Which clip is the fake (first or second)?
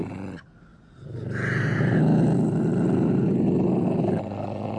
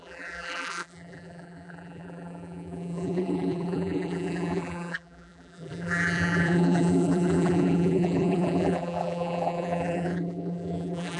second